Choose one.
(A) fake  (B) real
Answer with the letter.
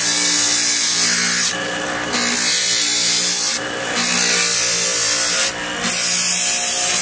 B